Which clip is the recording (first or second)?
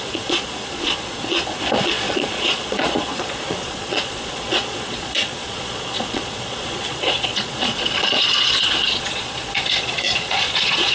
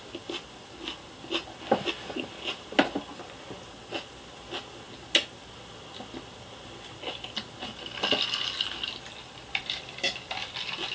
second